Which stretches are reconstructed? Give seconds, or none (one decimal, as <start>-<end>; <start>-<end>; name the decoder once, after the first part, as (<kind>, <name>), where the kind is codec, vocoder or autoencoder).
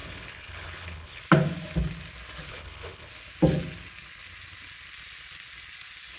0.0-1.2 (codec, HILCodec); 2.5-3.1